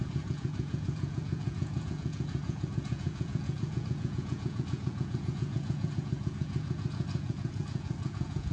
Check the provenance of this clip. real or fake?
fake